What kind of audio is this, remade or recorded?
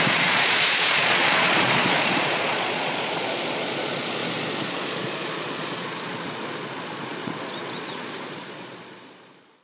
remade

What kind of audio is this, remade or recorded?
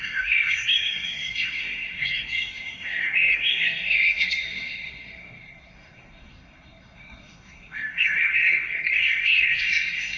remade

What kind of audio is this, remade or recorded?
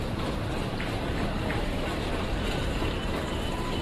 remade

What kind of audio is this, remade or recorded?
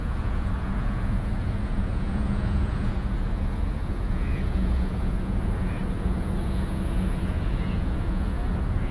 remade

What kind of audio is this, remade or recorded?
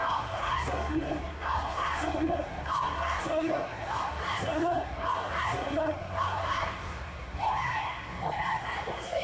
remade